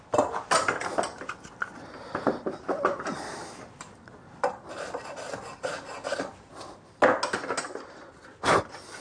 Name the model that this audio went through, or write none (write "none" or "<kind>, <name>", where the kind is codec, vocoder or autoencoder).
none